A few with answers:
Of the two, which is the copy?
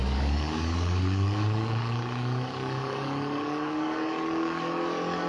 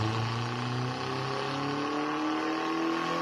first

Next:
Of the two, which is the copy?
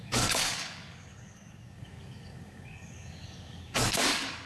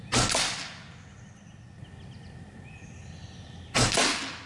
first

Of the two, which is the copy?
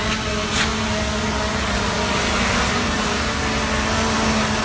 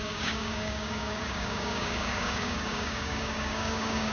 second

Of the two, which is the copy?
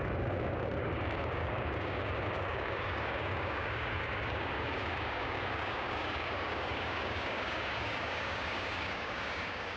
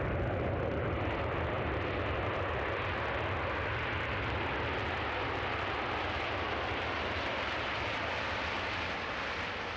first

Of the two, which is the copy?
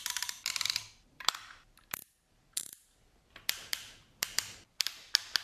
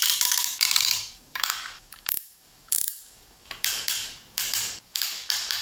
second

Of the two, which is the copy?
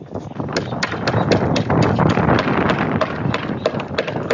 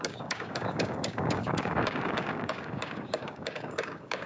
second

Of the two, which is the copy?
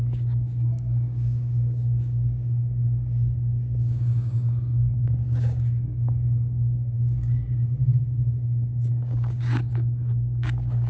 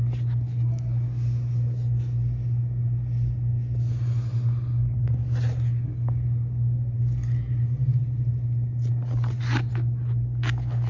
first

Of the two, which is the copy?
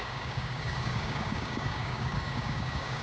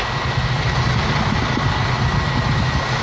first